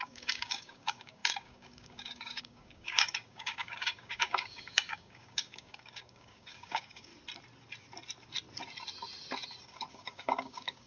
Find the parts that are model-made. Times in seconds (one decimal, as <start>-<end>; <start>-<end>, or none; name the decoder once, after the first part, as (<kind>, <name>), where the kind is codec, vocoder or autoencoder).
0.0-7.1 (codec, DAC); 9.9-10.9